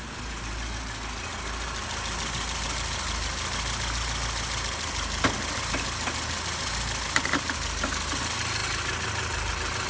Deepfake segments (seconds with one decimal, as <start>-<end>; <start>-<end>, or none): none